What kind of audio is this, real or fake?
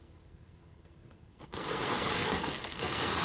fake